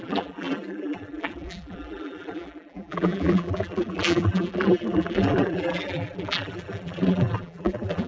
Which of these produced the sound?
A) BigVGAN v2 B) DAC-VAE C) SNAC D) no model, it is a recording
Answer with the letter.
A